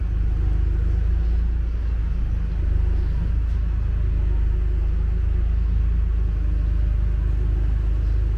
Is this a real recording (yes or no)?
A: yes